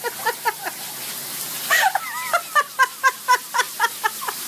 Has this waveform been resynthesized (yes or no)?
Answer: no